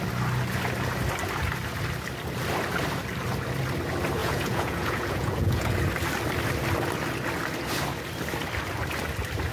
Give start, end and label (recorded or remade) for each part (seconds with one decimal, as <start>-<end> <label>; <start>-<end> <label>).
0.0-4.2 recorded; 4.2-5.8 remade; 5.8-9.5 recorded